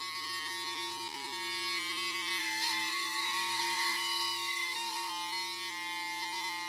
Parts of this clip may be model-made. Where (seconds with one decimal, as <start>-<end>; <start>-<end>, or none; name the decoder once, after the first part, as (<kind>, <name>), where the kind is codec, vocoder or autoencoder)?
2.4-5.1 (codec, SNAC)